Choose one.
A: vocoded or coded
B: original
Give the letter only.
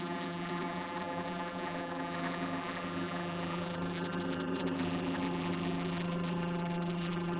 A